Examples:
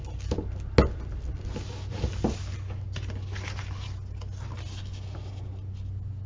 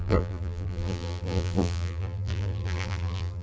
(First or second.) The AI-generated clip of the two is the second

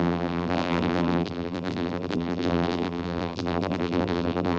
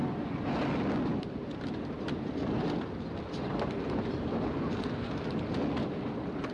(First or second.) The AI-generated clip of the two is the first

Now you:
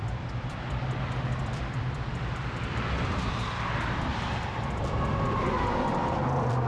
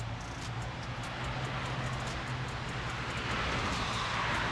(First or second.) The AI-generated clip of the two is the first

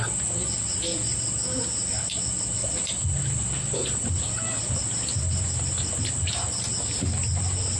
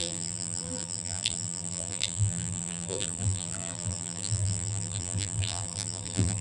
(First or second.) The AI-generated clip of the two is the second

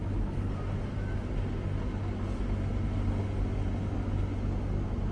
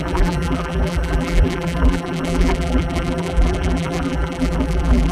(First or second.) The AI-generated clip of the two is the second